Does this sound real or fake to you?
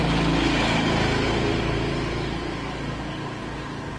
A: real